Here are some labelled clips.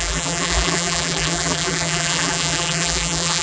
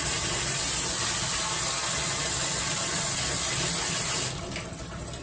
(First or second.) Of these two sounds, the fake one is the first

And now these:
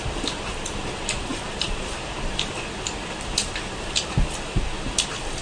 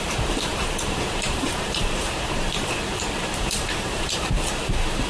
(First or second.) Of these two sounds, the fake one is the second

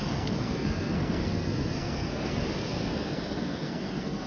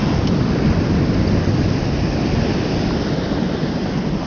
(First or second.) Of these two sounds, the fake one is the first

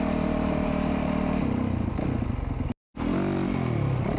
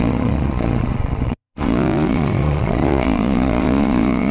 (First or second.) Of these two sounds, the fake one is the second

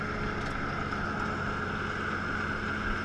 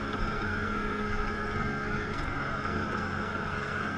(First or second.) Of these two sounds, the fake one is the second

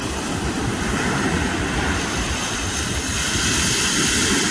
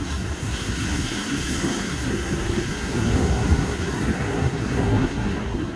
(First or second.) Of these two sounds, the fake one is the second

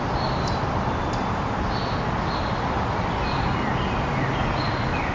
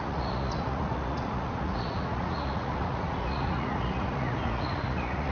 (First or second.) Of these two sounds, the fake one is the second